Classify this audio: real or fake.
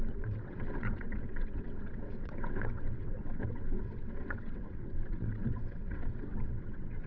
fake